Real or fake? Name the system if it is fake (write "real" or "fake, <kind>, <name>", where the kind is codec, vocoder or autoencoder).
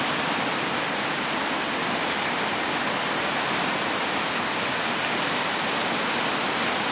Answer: real